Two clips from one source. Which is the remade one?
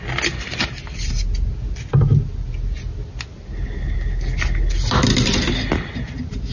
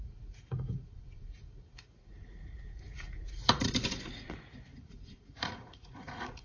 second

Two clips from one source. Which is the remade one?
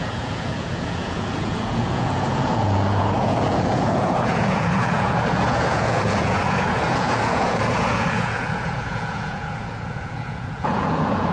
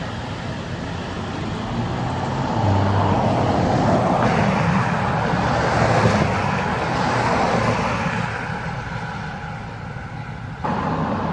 first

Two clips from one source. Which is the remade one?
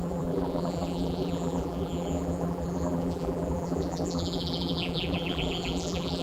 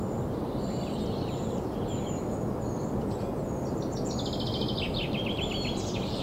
first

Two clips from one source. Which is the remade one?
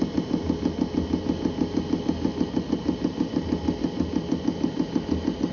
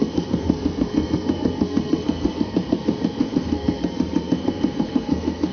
second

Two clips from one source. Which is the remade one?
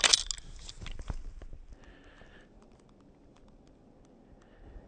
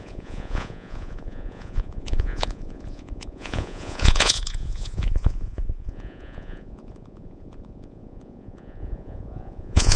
second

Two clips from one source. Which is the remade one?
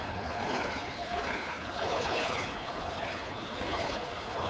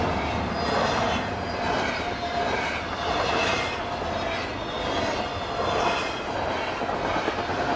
first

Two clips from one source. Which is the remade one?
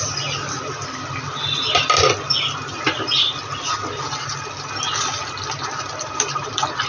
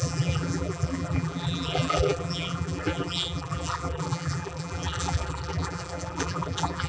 second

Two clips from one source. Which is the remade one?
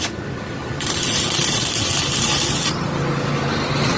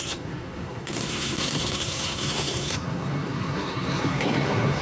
second